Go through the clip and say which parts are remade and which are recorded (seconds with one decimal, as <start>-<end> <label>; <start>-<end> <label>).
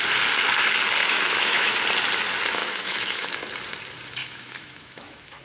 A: 0.0-1.0 recorded; 1.0-1.7 remade; 1.7-2.6 recorded; 2.6-3.4 remade; 3.4-4.2 recorded; 4.2-5.4 remade